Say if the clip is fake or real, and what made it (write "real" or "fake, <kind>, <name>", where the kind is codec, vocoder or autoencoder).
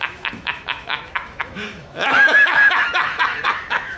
fake, autoencoder, DAC-VAE